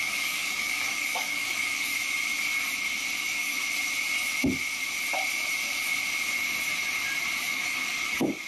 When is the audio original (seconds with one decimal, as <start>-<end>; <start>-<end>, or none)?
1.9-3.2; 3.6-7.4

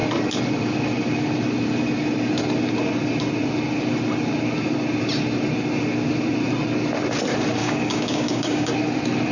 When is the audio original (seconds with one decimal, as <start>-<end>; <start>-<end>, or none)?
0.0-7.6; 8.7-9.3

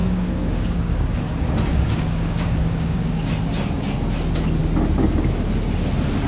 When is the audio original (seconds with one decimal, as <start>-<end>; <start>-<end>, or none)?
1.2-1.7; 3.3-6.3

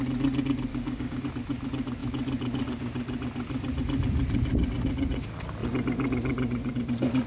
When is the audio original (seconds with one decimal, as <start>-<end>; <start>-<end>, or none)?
0.0-0.7; 1.3-7.3

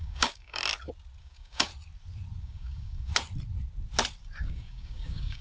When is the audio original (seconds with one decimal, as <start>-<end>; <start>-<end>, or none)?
0.6-1.2; 1.7-2.4; 3.1-4.4

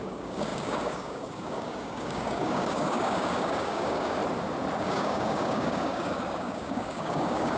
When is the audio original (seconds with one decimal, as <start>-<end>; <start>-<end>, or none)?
4.2-4.8

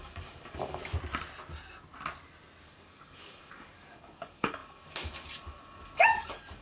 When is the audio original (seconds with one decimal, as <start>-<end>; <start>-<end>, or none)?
0.8-2.6

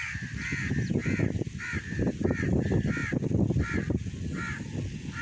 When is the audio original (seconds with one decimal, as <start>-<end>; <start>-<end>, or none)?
0.0-5.2